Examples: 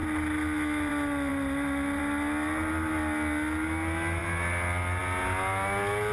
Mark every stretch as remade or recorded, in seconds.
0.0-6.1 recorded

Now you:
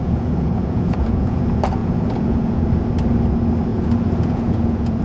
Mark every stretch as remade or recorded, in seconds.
0.0-1.4 remade; 1.4-1.8 recorded; 1.8-2.7 remade; 2.7-3.7 recorded; 3.7-5.0 remade